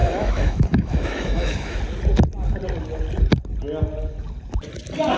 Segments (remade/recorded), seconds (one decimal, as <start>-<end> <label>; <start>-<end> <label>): 0.0-1.8 remade; 1.8-5.2 recorded